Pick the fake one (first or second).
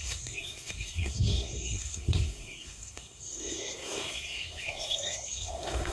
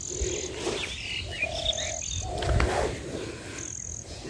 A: first